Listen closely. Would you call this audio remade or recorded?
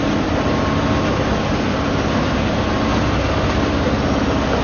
recorded